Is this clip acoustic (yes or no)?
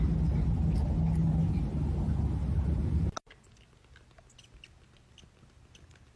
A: yes